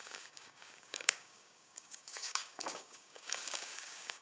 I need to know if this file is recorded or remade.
remade